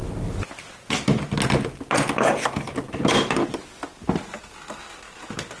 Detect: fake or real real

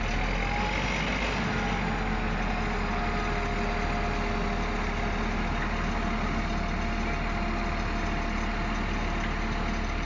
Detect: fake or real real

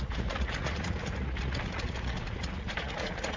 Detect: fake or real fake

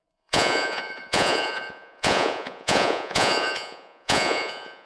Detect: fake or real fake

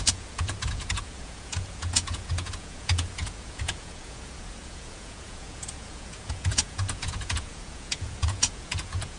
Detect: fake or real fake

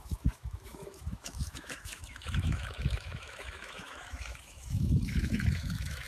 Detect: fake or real fake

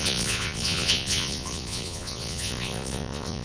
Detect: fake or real fake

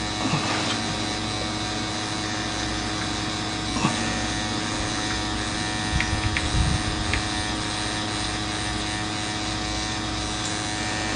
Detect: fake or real real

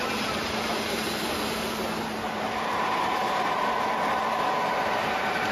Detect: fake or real fake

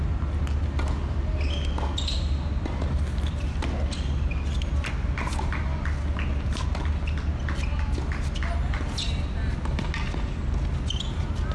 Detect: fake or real real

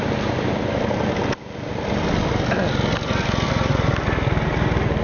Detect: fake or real real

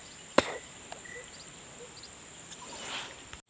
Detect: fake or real real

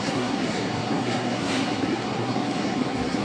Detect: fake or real fake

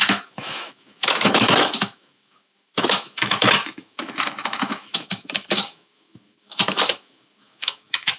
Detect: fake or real fake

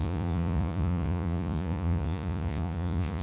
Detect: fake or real fake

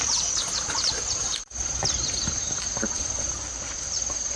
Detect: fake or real fake